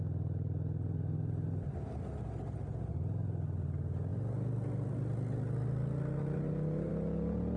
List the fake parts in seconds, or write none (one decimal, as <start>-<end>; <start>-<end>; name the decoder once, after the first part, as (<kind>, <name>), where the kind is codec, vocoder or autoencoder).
none